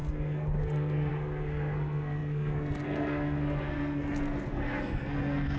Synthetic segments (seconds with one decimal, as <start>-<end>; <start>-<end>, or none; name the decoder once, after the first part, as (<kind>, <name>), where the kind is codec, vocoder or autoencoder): 0.0-5.6 (codec, SNAC)